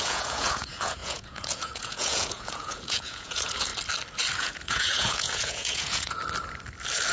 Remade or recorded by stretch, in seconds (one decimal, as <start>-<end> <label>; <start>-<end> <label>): 0.0-3.7 remade; 3.7-4.4 recorded; 4.4-6.2 remade; 6.2-7.1 recorded